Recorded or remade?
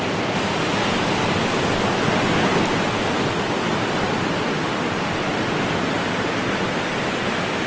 recorded